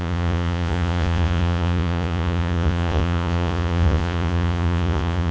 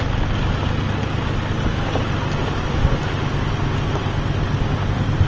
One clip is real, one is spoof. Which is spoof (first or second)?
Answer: first